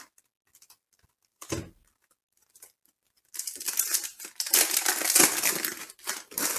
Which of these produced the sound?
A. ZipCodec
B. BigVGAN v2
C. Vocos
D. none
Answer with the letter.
D